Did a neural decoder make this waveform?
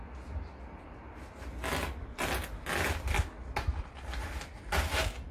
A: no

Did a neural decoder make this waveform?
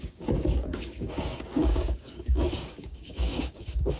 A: yes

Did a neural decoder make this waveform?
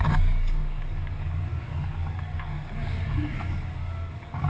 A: yes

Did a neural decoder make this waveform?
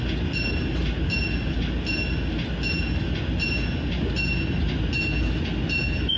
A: no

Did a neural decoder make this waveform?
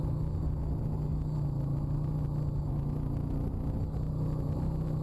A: no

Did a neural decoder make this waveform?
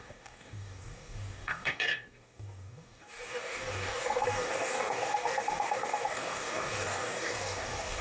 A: yes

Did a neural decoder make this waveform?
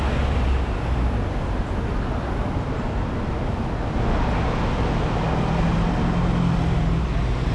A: no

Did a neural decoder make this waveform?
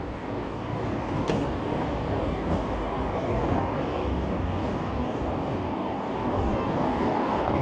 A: yes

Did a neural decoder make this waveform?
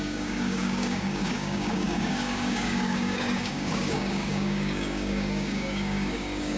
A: yes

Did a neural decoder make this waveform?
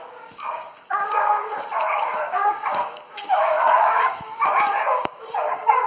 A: yes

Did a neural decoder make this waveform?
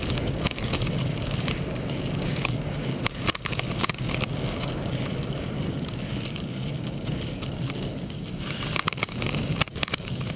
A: yes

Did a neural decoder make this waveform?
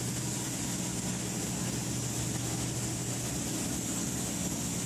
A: no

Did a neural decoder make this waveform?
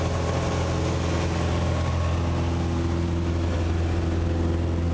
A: no